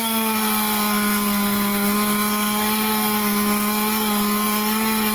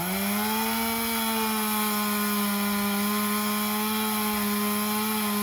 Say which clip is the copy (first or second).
first